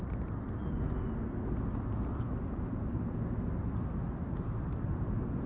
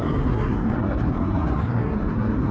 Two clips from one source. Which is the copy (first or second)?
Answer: second